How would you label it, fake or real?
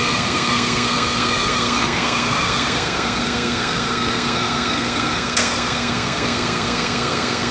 fake